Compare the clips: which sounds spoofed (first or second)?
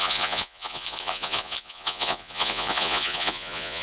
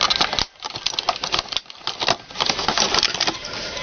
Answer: first